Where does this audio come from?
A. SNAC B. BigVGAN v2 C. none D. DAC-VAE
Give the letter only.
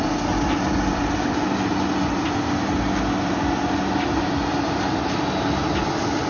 C